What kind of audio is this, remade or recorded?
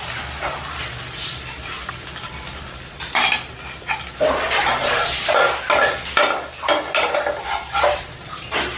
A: recorded